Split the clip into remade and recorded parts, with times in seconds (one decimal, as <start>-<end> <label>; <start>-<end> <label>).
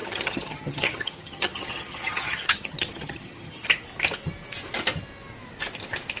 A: 0.0-3.7 remade; 3.7-6.2 recorded